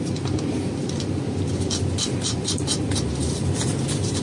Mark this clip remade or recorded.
remade